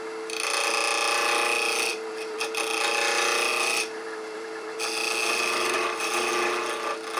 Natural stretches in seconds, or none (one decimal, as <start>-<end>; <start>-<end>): 0.0-1.9; 2.6-3.5; 4.8-5.2; 6.3-7.2